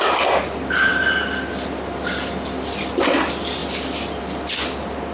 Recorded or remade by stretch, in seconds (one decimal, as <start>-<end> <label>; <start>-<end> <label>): 0.0-5.1 recorded